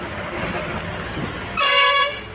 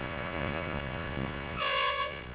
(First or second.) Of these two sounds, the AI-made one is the second